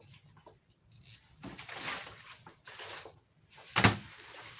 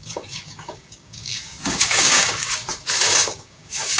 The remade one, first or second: second